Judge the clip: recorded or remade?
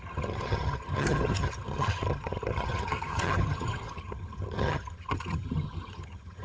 remade